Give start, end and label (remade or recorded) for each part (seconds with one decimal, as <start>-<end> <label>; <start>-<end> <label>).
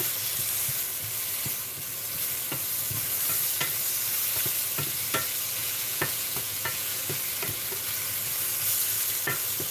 0.0-5.6 recorded; 5.6-7.0 remade; 7.0-9.7 recorded